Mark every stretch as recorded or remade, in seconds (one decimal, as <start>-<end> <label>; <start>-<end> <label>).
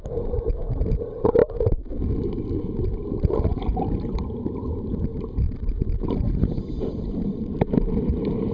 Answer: 0.0-1.4 remade; 1.4-2.6 recorded; 2.6-8.5 remade